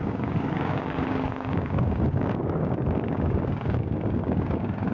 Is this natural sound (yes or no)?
no